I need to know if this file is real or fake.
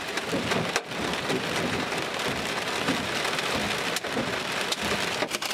real